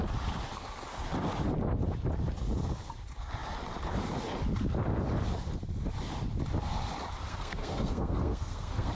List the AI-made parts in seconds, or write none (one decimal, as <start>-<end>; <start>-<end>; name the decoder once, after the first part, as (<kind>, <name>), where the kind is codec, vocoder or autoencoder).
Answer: 7.3-8.9 (codec, SNAC)